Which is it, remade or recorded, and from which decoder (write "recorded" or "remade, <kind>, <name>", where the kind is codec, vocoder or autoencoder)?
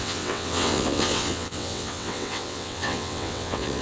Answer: remade, vocoder, WaveNeXt